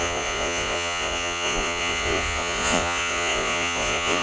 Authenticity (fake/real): fake